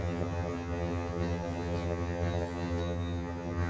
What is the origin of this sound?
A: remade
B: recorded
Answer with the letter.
A